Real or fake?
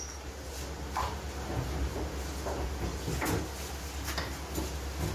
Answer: real